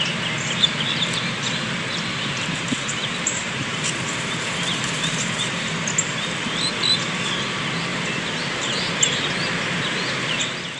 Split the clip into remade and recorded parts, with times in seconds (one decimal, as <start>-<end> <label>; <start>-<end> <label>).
0.0-2.1 recorded; 2.1-5.7 remade; 5.7-7.9 recorded; 7.9-8.9 remade; 8.9-10.8 recorded